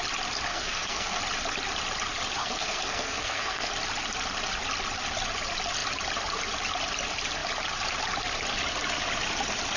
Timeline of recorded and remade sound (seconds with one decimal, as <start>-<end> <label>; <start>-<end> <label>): 0.0-0.5 recorded; 0.5-1.2 remade; 1.2-2.4 recorded; 2.4-3.7 remade; 3.7-9.8 recorded